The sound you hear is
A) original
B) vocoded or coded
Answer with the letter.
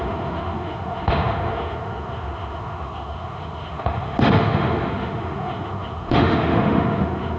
B